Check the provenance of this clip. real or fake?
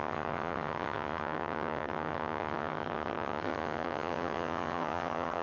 fake